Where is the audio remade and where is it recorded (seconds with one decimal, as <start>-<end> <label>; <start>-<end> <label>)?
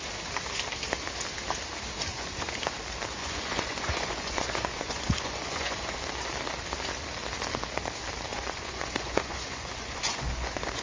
0.0-2.1 recorded; 2.1-2.6 remade; 2.6-3.2 recorded; 3.2-6.0 remade; 6.0-8.3 recorded; 8.3-10.8 remade